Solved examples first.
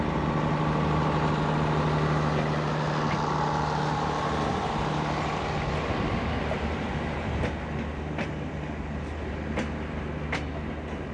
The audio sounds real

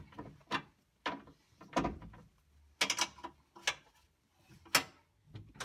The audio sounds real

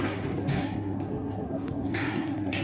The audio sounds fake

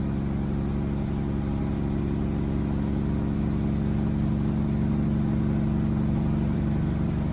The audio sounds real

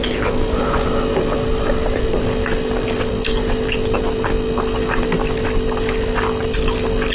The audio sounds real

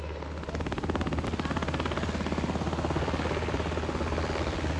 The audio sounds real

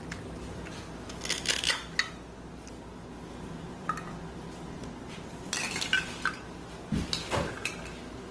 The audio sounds real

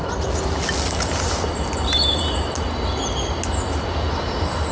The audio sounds real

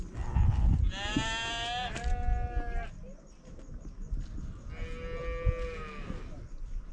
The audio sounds real